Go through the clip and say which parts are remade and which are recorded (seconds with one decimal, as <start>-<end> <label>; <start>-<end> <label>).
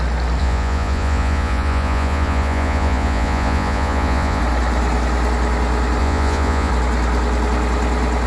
0.0-0.4 recorded; 0.4-4.4 remade; 4.4-6.0 recorded; 6.0-6.7 remade; 6.7-8.3 recorded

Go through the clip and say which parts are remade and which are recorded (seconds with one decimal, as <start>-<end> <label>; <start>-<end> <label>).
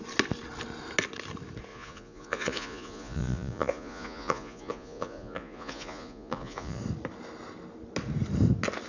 0.0-1.7 recorded; 1.7-6.8 remade; 6.8-8.9 recorded